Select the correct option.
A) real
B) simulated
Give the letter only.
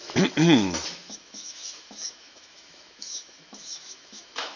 B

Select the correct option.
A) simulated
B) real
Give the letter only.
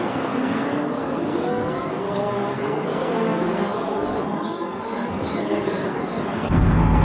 A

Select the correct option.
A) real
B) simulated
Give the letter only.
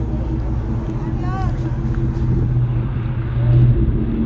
A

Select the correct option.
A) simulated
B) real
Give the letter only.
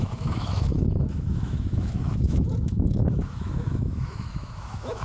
A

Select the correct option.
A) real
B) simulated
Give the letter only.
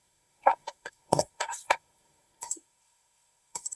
B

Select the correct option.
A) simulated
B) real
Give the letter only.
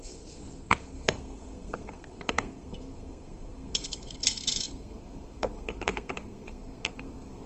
A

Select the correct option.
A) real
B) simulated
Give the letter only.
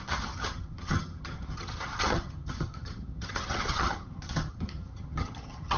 B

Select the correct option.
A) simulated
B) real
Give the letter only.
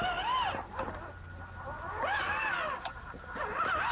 B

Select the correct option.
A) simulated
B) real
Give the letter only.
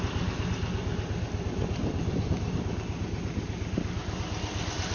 B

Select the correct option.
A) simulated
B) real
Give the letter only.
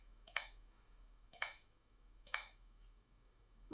A